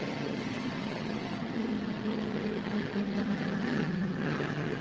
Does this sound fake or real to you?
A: fake